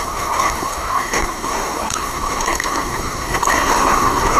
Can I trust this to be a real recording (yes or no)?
no